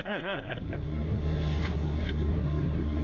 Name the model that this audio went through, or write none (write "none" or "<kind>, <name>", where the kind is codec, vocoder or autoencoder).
codec, SNAC